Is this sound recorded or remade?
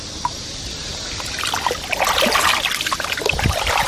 recorded